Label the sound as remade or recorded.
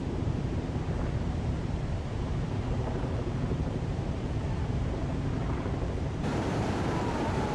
remade